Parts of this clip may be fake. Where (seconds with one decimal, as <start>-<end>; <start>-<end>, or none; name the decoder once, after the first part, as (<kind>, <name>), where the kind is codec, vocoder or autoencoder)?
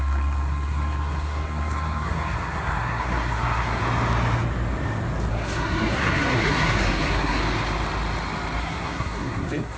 0.0-3.8 (codec, SNAC); 5.3-7.4; 8.6-9.8